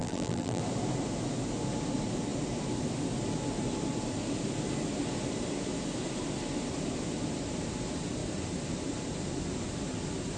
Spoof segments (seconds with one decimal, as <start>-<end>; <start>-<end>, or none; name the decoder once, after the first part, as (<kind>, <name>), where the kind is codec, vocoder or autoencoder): 0.0-0.6 (vocoder, BigVGAN v2)